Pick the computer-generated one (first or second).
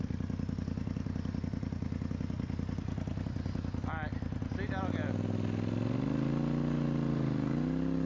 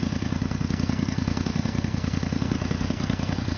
second